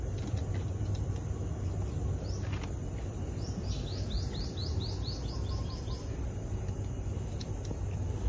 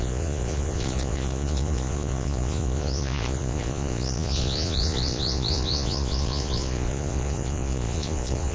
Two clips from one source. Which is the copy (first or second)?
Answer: second